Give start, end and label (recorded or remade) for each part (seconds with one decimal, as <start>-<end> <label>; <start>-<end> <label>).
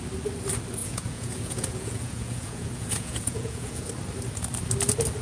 0.0-0.8 recorded; 0.8-3.9 remade; 3.9-5.2 recorded